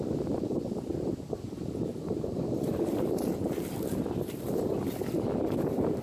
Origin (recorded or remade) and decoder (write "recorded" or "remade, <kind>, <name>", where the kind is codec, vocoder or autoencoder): remade, vocoder, BigVGAN v2